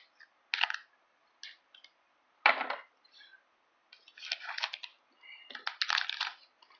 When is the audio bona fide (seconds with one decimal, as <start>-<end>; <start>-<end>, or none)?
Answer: 0.0-6.8

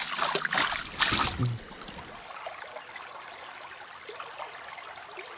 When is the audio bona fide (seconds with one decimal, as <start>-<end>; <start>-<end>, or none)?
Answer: 0.0-5.4